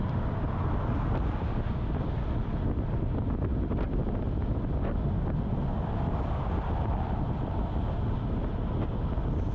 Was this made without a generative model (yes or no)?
yes